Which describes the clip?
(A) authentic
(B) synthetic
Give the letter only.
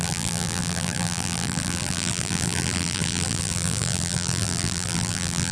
B